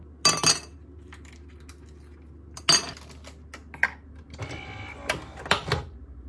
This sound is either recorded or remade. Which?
recorded